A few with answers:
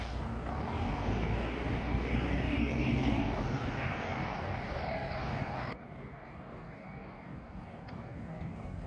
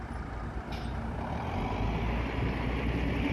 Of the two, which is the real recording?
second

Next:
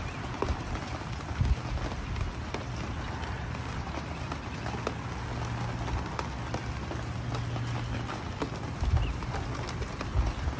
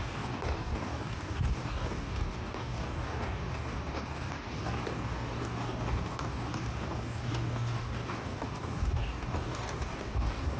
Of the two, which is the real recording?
first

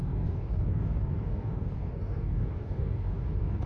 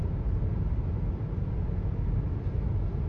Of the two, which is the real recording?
second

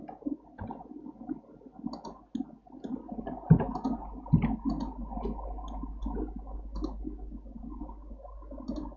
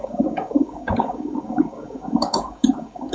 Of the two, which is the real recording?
first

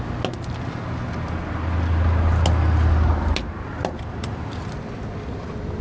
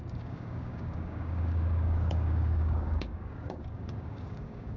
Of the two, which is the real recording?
first